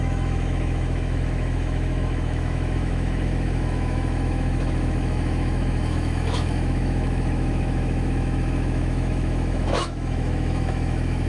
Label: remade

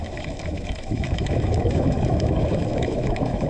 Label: remade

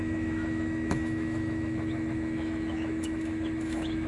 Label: remade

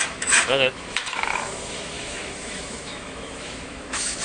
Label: remade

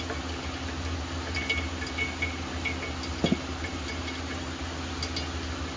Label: recorded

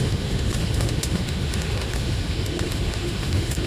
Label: remade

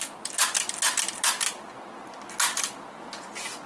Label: recorded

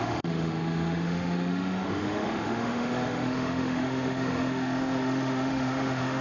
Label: remade